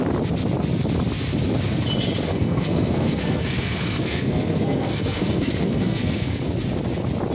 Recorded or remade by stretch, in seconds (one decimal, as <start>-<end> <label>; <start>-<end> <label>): 0.0-2.3 recorded; 2.3-6.4 remade; 6.4-7.3 recorded